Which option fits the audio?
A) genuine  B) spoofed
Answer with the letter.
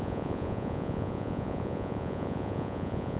B